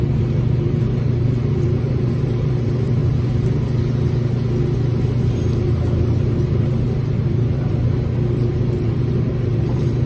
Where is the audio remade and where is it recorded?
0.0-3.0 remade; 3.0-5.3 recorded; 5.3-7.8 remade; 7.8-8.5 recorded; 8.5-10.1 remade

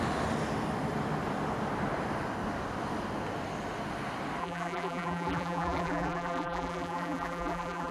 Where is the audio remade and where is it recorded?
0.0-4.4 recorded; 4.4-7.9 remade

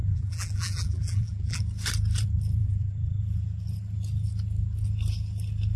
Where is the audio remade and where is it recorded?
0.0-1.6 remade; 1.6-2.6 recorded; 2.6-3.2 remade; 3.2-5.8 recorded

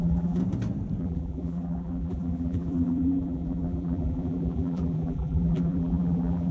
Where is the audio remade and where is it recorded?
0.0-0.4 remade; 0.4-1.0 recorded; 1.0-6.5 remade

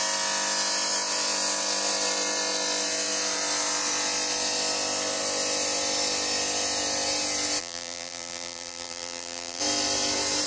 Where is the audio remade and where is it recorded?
0.0-7.6 recorded; 7.6-9.6 remade; 9.6-10.5 recorded

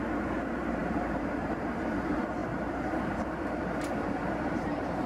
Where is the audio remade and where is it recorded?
0.0-5.1 remade

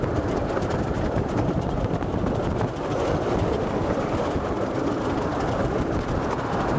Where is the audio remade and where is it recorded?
0.0-0.7 recorded; 0.7-1.6 remade; 1.6-6.8 recorded